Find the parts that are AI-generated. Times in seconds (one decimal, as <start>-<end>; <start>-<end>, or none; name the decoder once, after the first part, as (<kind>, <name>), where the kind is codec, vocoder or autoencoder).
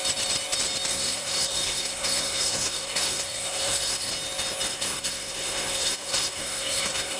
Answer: 0.9-4.1 (codec, SNAC); 4.7-7.2